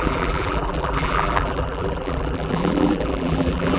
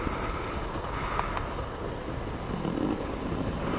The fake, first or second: first